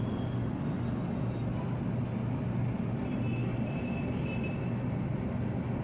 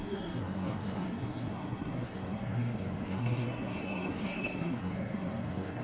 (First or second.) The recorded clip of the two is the first